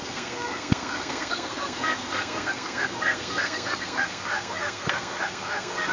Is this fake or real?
fake